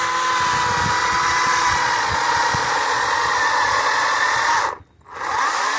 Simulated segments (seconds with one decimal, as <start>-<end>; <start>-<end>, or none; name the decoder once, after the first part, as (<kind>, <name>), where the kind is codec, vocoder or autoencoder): 1.0-4.5 (vocoder, Vocos)